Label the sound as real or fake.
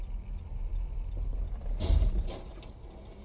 real